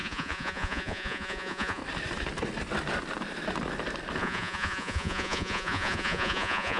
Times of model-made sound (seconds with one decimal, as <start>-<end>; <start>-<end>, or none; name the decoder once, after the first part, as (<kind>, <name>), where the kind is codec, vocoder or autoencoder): 0.0-1.8 (vocoder, Vocos); 4.2-6.8